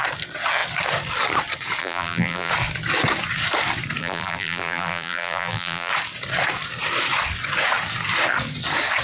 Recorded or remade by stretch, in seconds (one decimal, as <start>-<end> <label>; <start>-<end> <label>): 0.0-1.8 recorded; 1.8-2.5 remade; 2.5-4.0 recorded; 4.0-5.9 remade; 5.9-9.0 recorded